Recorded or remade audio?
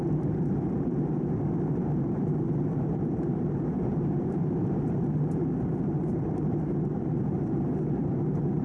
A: remade